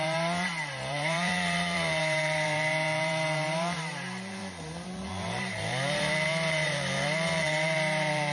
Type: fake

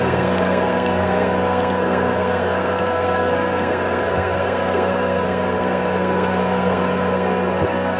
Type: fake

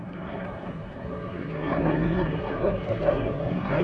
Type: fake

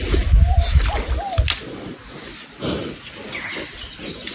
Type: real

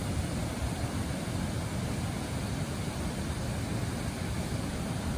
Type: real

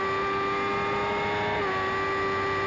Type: real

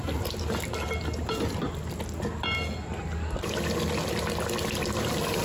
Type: real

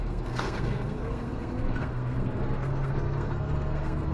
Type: fake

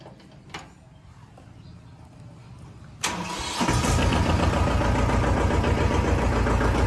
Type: real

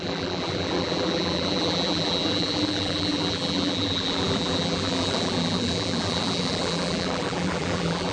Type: fake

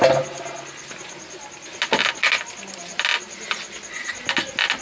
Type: real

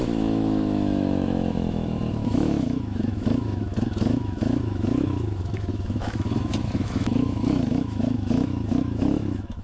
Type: fake